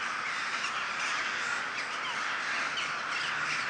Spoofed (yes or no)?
no